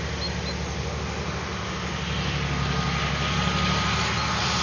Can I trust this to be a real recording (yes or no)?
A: yes